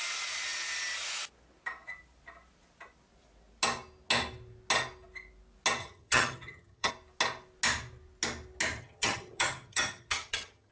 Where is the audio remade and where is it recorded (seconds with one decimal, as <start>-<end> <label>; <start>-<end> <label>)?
0.0-5.8 recorded; 5.8-6.9 remade; 6.9-8.8 recorded; 8.8-10.7 remade